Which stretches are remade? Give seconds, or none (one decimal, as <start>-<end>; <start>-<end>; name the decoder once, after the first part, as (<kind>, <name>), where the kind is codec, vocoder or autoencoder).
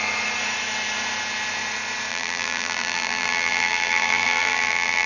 2.1-5.1 (vocoder, BigVGAN v2)